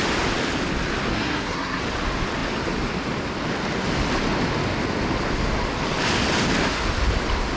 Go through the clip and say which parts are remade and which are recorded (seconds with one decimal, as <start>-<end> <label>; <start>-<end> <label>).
0.0-1.1 recorded; 1.1-1.8 remade; 1.8-7.6 recorded